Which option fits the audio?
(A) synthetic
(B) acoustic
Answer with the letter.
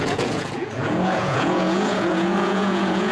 A